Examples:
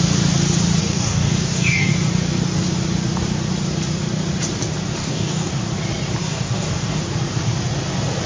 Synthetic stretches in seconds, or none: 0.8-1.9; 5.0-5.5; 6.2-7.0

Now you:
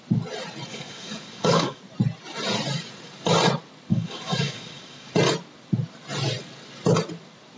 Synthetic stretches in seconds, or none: 0.7-1.8; 3.9-5.1

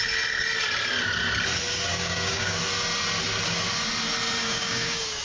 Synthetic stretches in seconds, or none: 1.9-2.6; 4.4-5.2

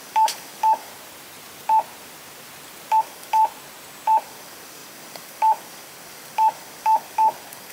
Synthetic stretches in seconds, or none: 0.0-0.9; 3.0-3.4; 4.2-7.7

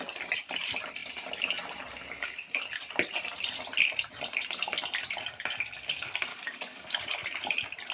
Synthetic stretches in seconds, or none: 6.3-6.9